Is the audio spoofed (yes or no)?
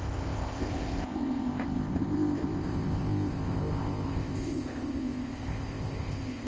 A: yes